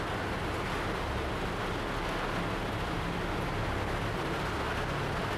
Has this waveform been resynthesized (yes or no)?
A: no